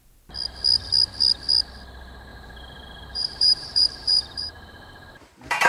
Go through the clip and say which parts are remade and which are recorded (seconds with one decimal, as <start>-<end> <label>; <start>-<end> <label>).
0.0-2.3 recorded; 2.3-5.7 remade